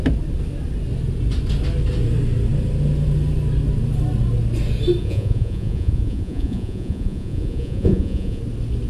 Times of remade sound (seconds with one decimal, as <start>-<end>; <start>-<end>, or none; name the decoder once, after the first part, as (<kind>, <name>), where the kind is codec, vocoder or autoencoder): 5.0-8.4 (vocoder, Vocos)